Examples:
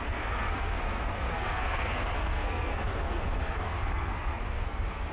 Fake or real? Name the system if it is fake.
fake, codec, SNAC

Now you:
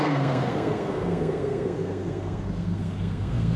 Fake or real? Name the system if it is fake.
fake, codec, SNAC